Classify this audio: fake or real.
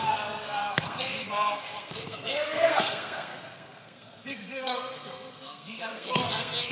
fake